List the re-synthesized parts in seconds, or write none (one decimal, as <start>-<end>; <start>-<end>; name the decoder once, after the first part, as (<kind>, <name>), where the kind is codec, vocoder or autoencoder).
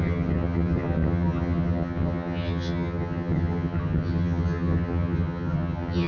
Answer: 0.0-6.1 (vocoder, HiFi-GAN)